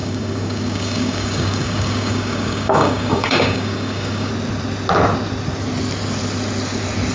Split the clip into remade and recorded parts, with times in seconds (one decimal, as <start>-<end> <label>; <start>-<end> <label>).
0.0-4.3 remade; 4.3-7.1 recorded